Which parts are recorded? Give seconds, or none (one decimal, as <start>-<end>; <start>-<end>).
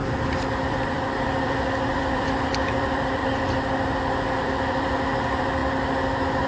0.0-0.7; 3.2-4.3; 5.6-6.5